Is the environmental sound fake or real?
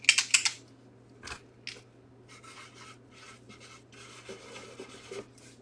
real